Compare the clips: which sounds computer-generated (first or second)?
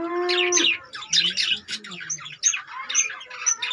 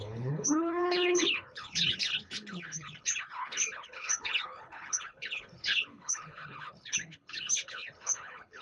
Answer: second